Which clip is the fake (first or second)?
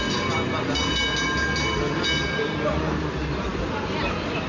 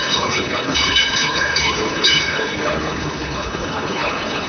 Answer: second